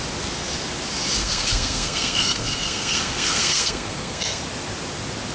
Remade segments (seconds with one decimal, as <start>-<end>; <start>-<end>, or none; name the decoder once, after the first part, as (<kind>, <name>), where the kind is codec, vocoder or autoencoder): 1.2-4.4 (codec, SNAC)